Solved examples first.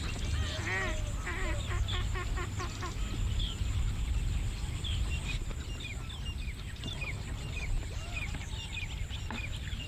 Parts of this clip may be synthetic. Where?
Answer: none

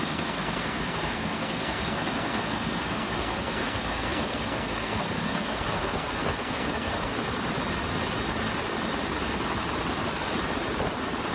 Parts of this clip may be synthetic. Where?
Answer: 0.0-7.1 (codec, SNAC)

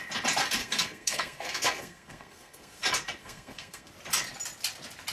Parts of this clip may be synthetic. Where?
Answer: 0.6-2.8 (codec, SNAC); 3.2-3.9